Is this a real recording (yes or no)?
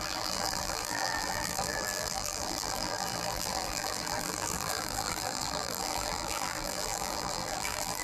no